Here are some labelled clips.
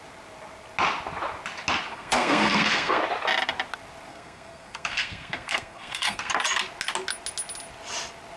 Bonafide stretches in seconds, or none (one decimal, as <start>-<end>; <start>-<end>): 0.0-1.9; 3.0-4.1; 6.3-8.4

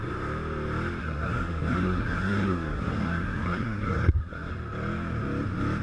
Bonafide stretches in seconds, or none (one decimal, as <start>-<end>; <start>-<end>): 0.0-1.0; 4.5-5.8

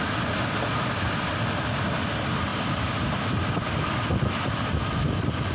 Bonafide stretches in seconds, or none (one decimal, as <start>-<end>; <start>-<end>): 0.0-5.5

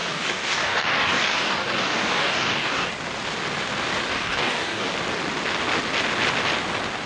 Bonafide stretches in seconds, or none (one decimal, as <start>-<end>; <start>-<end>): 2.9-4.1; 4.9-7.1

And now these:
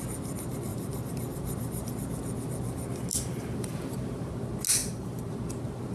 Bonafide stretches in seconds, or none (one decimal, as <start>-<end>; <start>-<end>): 0.0-0.7; 1.9-3.1; 4.3-4.8; 5.3-5.9

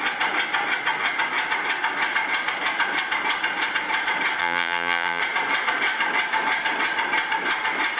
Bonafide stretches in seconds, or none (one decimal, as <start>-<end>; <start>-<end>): 0.0-4.4; 5.2-8.0